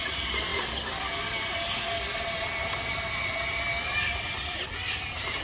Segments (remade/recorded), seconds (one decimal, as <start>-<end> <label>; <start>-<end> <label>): 0.0-5.4 recorded